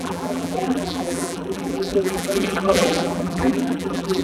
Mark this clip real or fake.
fake